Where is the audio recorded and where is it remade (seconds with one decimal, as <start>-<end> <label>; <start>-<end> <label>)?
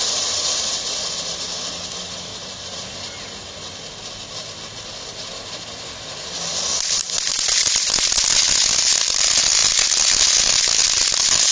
0.0-2.4 remade; 2.4-6.5 recorded; 6.5-7.0 remade; 7.0-8.5 recorded; 8.5-9.6 remade; 9.6-11.0 recorded; 11.0-11.5 remade